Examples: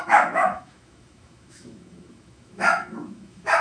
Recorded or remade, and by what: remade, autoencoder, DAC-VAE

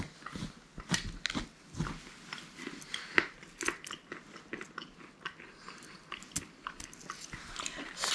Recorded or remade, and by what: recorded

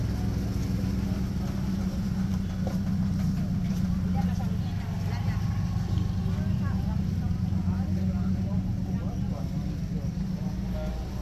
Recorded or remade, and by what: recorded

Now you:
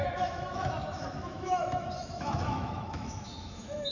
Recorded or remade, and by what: remade, autoencoder, DAC-VAE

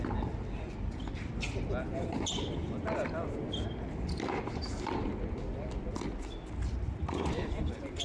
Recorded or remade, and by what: recorded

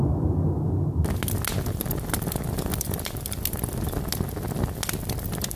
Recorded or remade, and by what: recorded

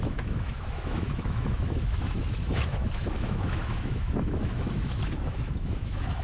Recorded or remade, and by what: remade, autoencoder, DAC-VAE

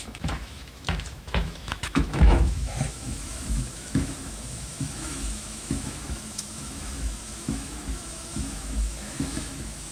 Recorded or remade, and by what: remade, autoencoder, DAC-VAE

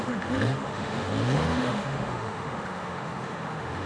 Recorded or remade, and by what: remade, autoencoder, DAC-VAE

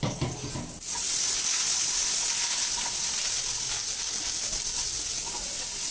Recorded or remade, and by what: recorded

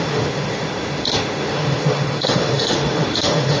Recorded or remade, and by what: remade, autoencoder, DAC-VAE